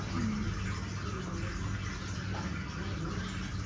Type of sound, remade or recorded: recorded